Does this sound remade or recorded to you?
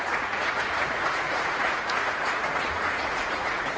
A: remade